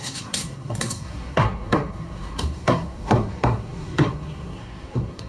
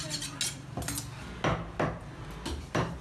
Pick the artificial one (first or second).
first